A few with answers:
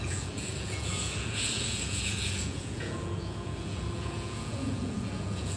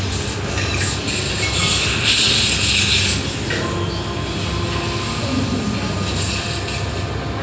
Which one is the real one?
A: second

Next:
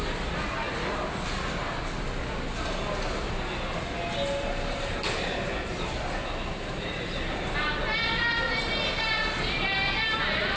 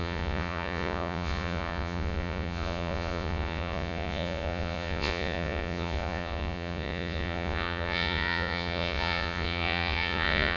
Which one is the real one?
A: first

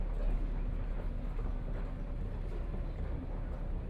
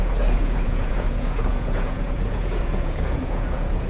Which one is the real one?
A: first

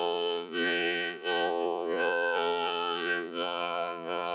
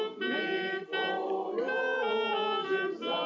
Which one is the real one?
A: second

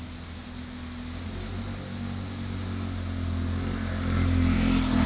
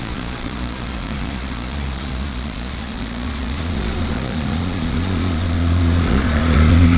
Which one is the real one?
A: first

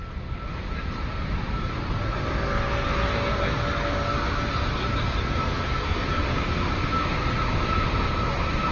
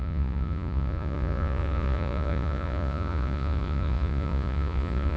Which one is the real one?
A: first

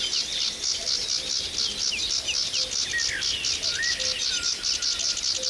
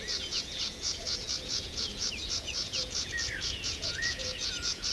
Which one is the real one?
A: first